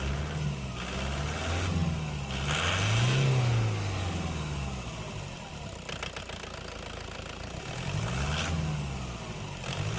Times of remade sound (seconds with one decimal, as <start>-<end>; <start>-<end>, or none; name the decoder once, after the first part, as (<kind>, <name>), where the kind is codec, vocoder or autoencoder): none